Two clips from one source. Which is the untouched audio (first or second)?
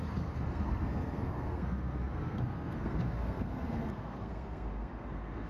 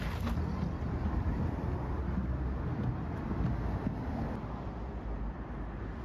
second